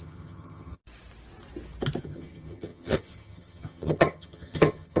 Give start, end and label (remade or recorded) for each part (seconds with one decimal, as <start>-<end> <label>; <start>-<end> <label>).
0.0-0.8 remade; 0.8-2.0 recorded; 2.0-5.0 remade